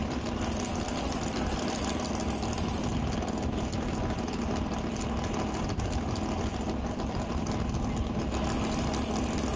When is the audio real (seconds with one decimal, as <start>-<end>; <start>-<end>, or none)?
0.0-9.6